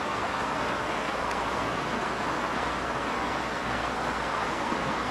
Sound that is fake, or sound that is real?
fake